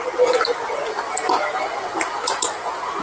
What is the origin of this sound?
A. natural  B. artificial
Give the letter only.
A